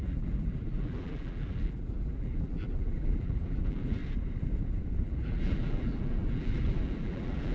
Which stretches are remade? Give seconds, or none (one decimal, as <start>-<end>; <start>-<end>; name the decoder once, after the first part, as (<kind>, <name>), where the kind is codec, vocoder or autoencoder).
0.0-4.0 (vocoder, BigVGAN v2); 5.0-7.5